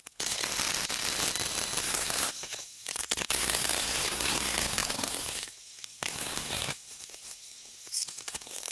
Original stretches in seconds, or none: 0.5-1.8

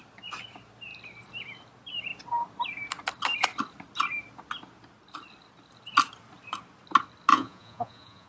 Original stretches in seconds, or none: 0.0-7.3

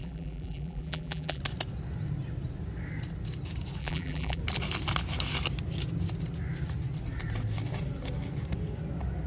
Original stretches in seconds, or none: 1.4-3.8; 4.4-9.3

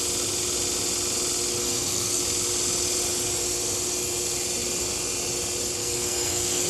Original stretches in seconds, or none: 0.0-1.5; 2.2-5.8

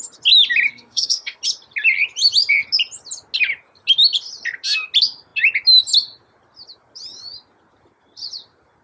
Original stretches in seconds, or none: 0.0-0.7; 1.4-8.8

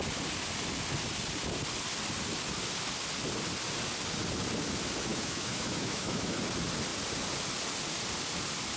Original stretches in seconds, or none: 0.0-5.1; 6.4-8.8

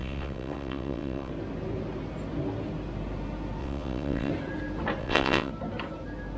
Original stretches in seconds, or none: 1.3-3.6; 4.3-5.0; 5.5-6.4

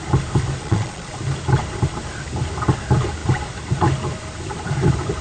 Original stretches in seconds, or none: 0.0-0.6; 1.2-5.2